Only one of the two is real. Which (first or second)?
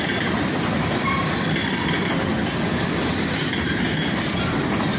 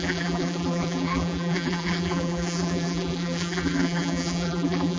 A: first